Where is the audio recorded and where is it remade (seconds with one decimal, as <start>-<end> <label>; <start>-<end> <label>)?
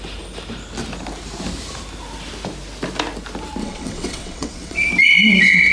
0.0-3.6 recorded; 3.6-4.9 remade; 4.9-5.7 recorded